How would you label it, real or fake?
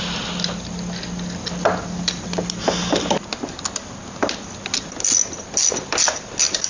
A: real